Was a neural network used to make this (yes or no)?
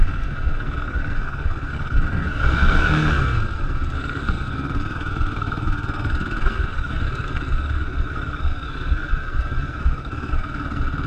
yes